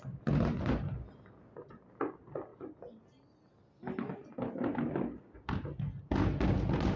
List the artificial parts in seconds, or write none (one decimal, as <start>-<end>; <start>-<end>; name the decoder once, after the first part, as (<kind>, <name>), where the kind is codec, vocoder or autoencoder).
none